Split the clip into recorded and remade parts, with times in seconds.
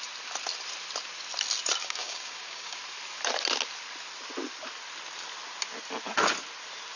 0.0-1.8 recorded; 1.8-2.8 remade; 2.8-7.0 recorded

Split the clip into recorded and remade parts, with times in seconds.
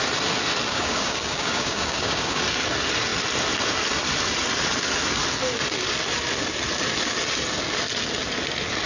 0.0-0.7 recorded; 0.7-2.4 remade; 2.4-8.9 recorded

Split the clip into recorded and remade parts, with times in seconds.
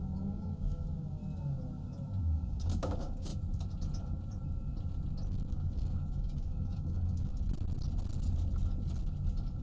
0.0-1.2 remade; 1.2-2.2 recorded; 2.2-3.3 remade; 3.3-5.3 recorded; 5.3-7.3 remade; 7.3-9.6 recorded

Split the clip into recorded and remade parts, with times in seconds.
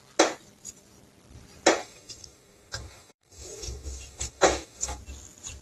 0.0-1.8 recorded; 1.8-5.0 remade; 5.0-5.6 recorded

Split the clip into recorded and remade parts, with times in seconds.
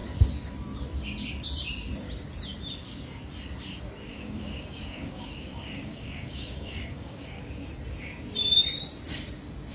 0.0-4.1 recorded; 4.1-7.4 remade; 7.4-9.7 recorded